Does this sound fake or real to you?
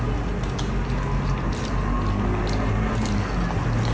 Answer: real